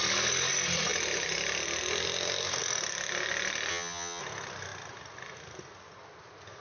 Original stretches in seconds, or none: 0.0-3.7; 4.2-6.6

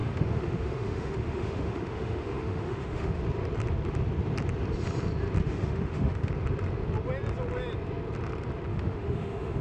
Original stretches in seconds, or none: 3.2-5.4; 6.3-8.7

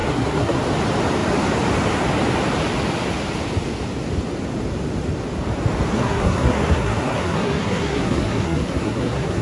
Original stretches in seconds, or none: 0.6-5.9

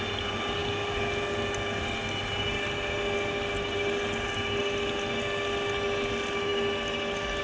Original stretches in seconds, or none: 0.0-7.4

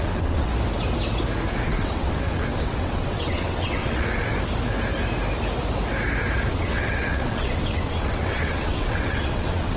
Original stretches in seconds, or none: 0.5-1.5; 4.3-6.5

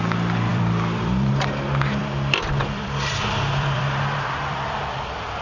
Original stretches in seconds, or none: 0.0-0.5; 1.3-2.0